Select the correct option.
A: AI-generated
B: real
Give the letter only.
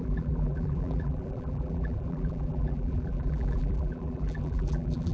A